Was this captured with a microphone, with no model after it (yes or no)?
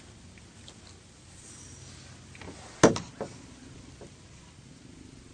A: yes